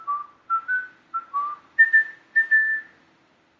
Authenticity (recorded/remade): recorded